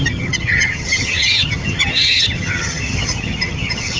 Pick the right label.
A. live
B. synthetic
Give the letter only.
B